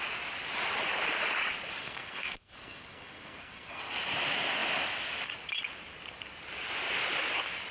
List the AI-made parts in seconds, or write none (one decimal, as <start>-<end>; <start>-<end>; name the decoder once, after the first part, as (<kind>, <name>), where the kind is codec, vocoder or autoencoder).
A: 1.8-3.8 (codec, SNAC)